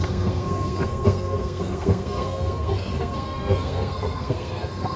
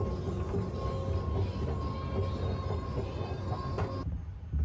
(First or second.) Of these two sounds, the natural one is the second